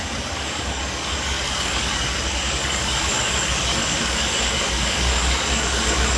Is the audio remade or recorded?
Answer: remade